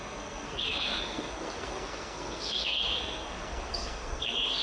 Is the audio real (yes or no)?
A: no